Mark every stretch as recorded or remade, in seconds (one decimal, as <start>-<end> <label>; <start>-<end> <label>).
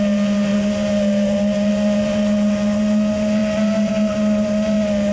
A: 0.0-5.1 recorded